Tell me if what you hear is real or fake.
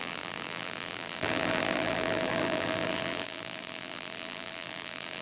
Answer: fake